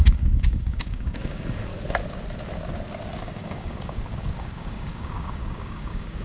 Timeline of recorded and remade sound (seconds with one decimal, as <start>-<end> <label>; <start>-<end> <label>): 0.0-1.7 remade; 1.7-3.2 recorded; 3.2-6.2 remade